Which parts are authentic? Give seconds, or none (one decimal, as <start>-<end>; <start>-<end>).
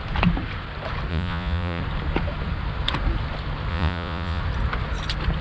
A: 0.0-1.1; 1.8-3.7; 4.4-5.4